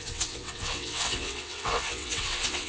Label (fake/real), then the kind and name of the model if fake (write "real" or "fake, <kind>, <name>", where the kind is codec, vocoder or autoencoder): fake, vocoder, WaveNeXt